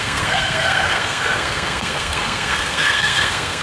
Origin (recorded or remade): remade